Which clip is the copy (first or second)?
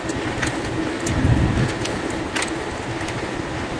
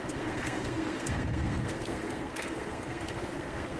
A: second